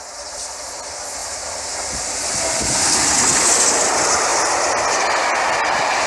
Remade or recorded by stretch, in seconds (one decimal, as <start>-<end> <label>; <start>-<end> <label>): 0.0-6.1 recorded